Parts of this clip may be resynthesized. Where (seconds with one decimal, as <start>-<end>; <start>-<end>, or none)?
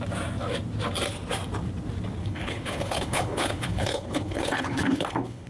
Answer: 2.2-5.5